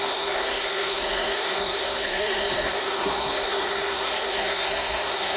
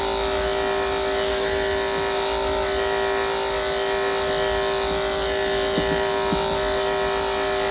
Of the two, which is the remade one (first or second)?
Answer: first